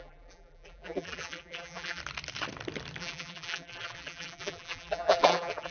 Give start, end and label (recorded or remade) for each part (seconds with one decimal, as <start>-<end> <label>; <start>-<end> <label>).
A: 0.0-2.0 remade; 2.0-3.0 recorded; 3.0-5.7 remade